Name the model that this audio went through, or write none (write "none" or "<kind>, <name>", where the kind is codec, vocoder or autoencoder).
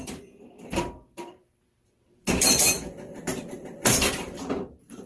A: vocoder, BigVGAN v2